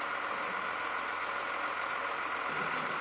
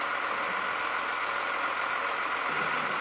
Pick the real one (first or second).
first